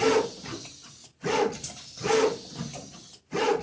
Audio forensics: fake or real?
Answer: real